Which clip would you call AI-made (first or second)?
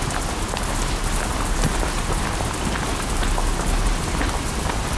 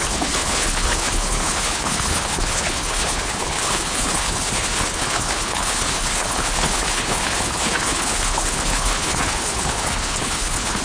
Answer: second